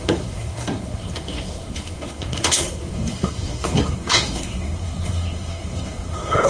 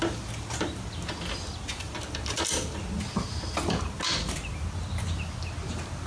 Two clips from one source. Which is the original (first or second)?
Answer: second